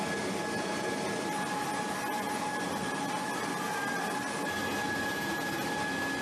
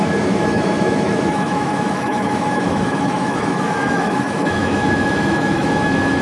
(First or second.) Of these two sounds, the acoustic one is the first